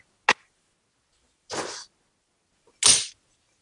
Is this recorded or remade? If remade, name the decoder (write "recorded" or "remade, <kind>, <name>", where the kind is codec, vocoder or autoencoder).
recorded